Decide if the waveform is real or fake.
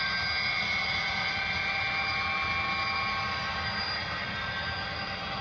real